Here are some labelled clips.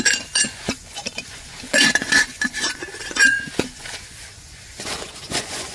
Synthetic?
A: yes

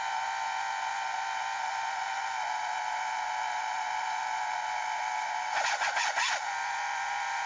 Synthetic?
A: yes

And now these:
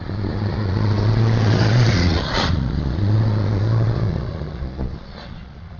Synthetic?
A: yes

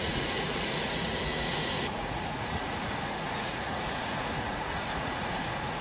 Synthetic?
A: yes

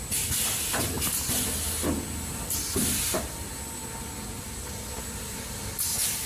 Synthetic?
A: no